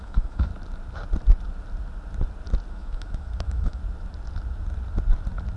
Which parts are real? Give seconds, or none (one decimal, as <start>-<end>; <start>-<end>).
0.5-2.7; 3.8-5.6